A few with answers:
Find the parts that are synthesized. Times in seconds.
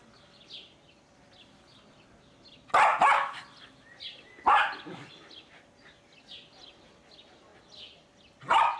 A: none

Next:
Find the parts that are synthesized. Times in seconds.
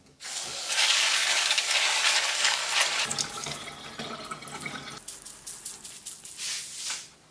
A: 0.0-2.6 (codec, DAC); 3.2-3.6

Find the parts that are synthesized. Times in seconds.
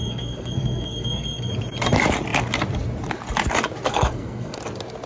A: 0.0-1.5 (codec, SNAC); 3.9-4.6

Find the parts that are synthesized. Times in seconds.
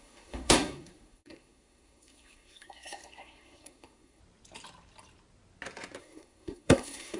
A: 0.0-4.2 (codec, SNAC); 6.0-7.2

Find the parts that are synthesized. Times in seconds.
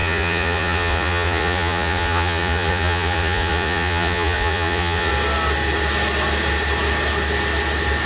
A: 0.0-5.1 (vocoder, Vocos)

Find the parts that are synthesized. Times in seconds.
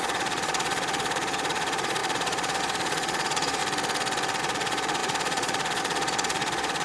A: 0.0-3.6 (vocoder, Vocos); 4.4-6.8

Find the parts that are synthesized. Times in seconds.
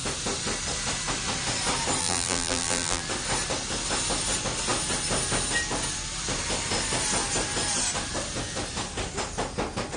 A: 2.0-3.0 (vocoder, BigVGAN v2)